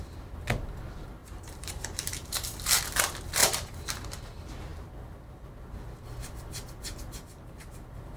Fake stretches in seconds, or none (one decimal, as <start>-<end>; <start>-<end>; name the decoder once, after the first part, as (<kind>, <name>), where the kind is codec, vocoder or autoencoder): 1.2-2.8 (vocoder, BigVGAN v2); 3.4-4.2